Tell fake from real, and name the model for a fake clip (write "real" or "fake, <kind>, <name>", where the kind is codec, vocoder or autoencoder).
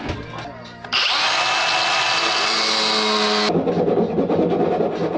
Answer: real